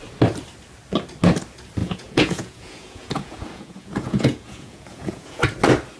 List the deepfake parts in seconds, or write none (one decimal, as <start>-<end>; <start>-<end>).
1.8-5.4